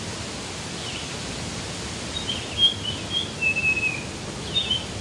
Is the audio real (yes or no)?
yes